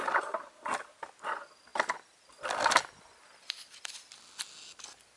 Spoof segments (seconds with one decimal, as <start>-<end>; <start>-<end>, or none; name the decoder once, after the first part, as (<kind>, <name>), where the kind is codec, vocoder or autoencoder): none